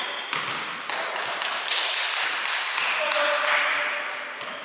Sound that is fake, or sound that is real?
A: real